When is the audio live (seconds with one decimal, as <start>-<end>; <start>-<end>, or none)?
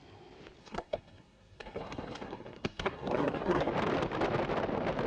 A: 0.0-0.6; 3.7-5.1